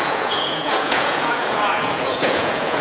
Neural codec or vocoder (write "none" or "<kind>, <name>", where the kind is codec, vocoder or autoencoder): vocoder, Vocos